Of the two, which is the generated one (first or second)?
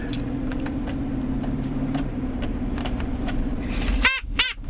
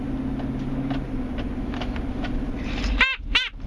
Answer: first